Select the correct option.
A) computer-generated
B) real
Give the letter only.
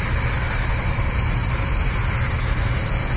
B